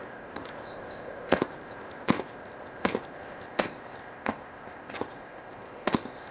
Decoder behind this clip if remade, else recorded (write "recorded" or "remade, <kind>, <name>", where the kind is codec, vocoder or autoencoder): remade, codec, ZipCodec